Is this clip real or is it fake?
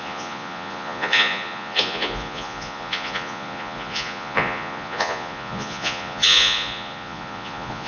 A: fake